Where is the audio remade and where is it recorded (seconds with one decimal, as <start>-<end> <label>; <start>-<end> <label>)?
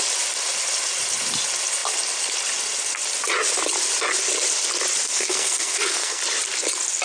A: 0.0-5.1 recorded; 5.1-6.2 remade; 6.2-7.0 recorded